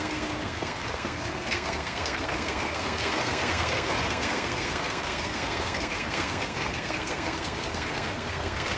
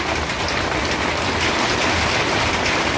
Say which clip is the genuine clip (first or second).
second